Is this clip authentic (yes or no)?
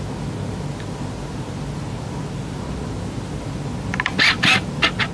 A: yes